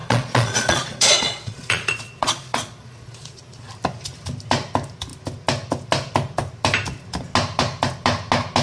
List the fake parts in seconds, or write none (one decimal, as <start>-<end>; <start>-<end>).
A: 0.0-3.7